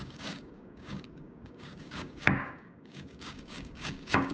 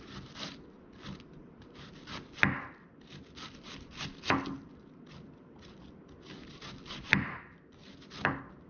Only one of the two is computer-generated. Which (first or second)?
first